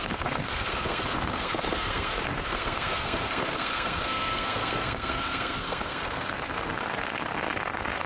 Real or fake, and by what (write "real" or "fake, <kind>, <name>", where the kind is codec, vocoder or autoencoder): fake, codec, SNAC